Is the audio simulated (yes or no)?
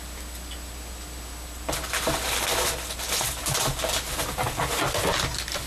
no